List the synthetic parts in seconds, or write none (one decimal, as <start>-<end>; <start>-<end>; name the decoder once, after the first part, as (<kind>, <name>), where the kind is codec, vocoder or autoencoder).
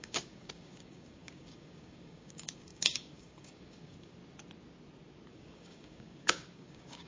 0.0-4.2 (codec, DAC); 5.3-7.1